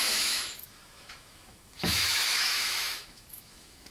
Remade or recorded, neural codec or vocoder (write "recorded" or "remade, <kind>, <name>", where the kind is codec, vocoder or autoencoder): remade, autoencoder, DAC-VAE